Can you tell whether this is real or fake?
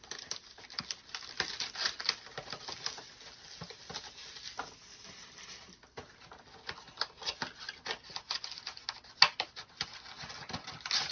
real